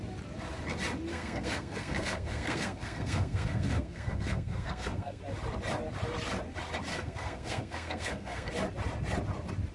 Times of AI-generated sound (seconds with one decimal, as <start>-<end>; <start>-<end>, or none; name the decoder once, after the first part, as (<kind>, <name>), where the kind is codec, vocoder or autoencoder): 1.1-5.2 (codec, SNAC); 6.9-8.5